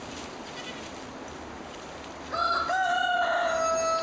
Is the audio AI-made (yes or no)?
no